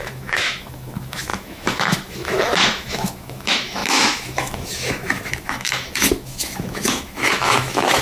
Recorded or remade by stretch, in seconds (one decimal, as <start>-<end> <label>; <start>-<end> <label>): 0.0-8.0 remade